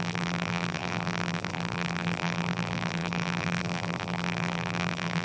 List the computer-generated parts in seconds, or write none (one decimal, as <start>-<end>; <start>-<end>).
0.0-5.2